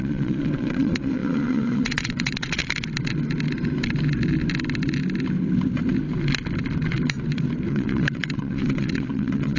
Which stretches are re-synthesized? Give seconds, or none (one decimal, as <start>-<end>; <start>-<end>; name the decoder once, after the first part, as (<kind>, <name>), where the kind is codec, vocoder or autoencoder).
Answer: 0.0-2.6 (vocoder, WaveNeXt); 7.7-9.6

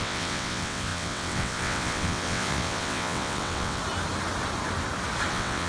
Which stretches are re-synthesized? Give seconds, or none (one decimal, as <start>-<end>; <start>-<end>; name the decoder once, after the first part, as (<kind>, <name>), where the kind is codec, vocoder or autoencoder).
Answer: 0.0-3.8 (vocoder, WaveNeXt); 5.3-5.7

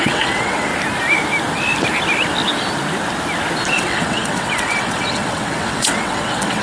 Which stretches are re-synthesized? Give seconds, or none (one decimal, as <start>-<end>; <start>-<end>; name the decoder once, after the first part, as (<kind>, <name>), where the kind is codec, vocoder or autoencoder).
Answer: 0.0-0.7 (vocoder, WaveNeXt); 3.7-6.6

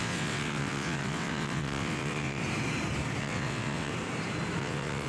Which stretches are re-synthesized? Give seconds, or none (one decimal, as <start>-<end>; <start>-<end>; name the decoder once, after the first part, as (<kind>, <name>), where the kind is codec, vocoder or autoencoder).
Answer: 0.0-2.4 (vocoder, WaveNeXt); 3.2-3.9; 4.6-5.1

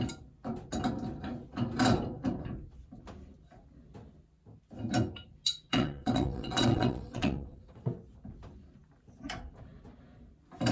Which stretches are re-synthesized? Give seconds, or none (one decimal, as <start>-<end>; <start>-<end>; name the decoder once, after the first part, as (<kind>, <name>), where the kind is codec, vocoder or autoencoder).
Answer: 5.7-8.0 (vocoder, WaveNeXt)

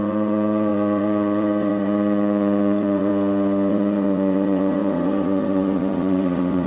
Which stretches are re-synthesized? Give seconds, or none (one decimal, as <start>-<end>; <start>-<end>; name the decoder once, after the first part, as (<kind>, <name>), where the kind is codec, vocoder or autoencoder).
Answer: 0.0-3.1 (vocoder, WaveNeXt); 3.7-6.7